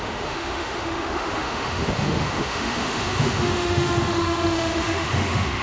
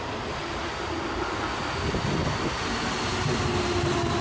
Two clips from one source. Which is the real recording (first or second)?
second